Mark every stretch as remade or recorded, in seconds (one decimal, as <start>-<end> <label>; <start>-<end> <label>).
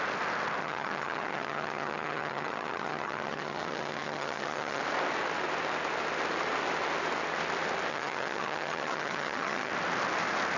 0.0-0.6 recorded; 0.6-4.8 remade; 4.8-7.9 recorded; 7.9-9.7 remade; 9.7-10.6 recorded